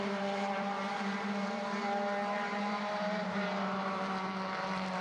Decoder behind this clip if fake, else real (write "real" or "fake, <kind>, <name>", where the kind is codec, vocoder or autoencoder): fake, vocoder, BigVGAN v2